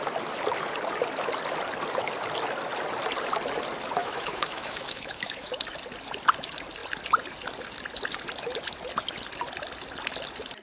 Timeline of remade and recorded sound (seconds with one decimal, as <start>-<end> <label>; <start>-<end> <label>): 0.0-4.0 recorded; 4.0-5.5 remade; 5.5-10.6 recorded